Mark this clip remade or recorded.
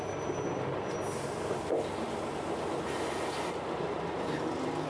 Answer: recorded